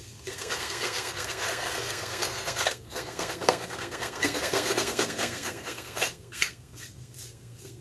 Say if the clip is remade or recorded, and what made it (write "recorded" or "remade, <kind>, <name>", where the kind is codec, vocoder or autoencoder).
remade, codec, SNAC